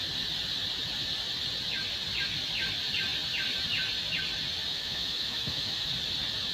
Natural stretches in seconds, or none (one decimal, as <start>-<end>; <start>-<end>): 0.0-4.7; 5.9-6.5